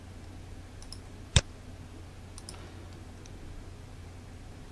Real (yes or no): yes